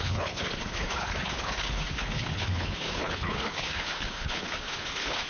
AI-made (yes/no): yes